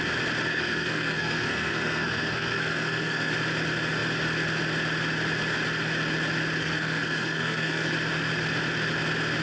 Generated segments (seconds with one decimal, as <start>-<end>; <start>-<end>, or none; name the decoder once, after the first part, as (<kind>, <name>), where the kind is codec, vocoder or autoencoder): 0.5-3.3 (codec, SNAC); 6.6-7.9